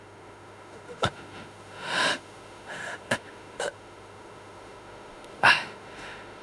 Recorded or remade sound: remade